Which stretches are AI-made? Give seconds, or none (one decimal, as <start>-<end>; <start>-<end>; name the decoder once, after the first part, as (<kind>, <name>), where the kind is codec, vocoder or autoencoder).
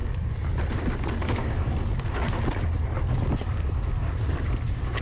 none